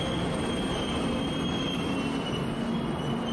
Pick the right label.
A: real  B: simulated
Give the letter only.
A